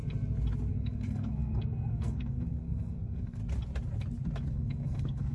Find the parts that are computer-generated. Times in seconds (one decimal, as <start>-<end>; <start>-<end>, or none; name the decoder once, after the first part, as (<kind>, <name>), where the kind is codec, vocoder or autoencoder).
0.7-3.4 (codec, SNAC); 4.5-5.3